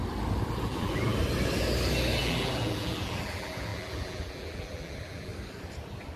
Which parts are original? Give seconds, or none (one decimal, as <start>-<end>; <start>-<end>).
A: 0.0-0.6; 1.1-2.2; 5.3-6.2